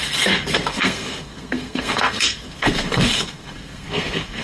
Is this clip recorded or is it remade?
remade